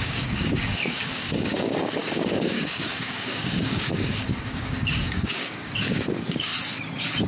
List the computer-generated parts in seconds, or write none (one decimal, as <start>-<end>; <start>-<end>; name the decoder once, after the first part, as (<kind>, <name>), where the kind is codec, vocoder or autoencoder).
0.0-6.5 (codec, DAC)